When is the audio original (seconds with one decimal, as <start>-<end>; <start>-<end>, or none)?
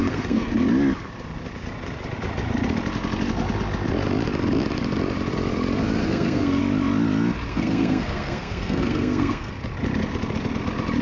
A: 0.5-6.0; 6.6-7.5; 9.5-11.0